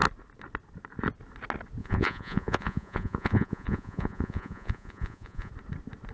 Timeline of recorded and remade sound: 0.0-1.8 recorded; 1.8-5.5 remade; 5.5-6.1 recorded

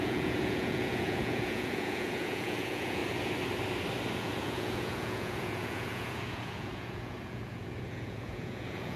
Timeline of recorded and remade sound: 0.0-3.0 remade; 3.0-4.2 recorded; 4.2-9.0 remade